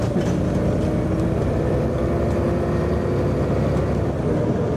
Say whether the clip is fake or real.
real